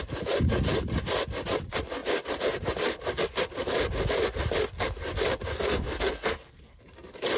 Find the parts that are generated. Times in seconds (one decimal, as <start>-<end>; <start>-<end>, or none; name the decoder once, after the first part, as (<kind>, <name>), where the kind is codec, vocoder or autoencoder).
5.5-6.8 (codec, SNAC)